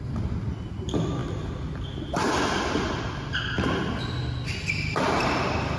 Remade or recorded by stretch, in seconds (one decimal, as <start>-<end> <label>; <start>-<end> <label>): 0.0-5.8 recorded